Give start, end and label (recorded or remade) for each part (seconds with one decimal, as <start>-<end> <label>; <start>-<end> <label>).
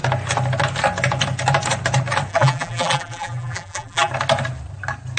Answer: 0.0-2.3 recorded; 2.3-4.1 remade; 4.1-5.2 recorded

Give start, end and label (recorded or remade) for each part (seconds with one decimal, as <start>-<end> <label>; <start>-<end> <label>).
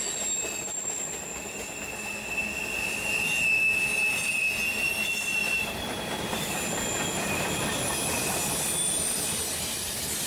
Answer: 0.0-2.4 recorded; 2.4-3.2 remade; 3.2-5.4 recorded; 5.4-9.4 remade; 9.4-10.3 recorded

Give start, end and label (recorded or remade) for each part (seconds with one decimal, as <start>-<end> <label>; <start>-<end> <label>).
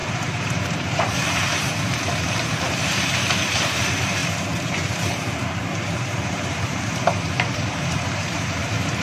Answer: 0.0-9.0 remade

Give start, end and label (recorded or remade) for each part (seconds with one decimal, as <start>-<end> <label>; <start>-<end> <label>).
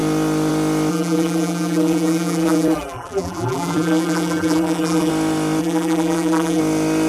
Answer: 0.0-0.9 recorded; 0.9-5.1 remade; 5.1-5.6 recorded; 5.6-6.6 remade; 6.6-7.1 recorded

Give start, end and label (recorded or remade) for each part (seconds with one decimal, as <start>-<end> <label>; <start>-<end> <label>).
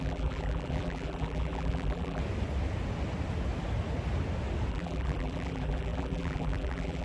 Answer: 0.0-2.2 remade; 2.2-4.7 recorded; 4.7-7.0 remade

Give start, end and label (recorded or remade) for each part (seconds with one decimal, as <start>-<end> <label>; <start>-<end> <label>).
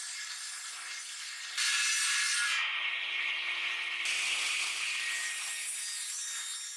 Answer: 0.0-6.8 recorded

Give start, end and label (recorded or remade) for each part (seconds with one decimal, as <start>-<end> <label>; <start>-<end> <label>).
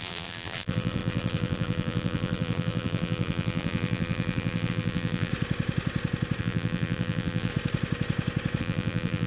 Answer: 0.0-5.3 remade; 5.3-6.4 recorded; 6.4-7.5 remade; 7.5-8.6 recorded; 8.6-9.3 remade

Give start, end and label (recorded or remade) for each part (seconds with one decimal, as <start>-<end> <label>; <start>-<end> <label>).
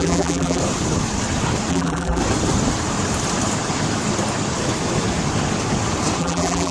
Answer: 0.0-0.6 remade; 0.6-1.7 recorded; 1.7-2.2 remade; 2.2-6.2 recorded; 6.2-6.7 remade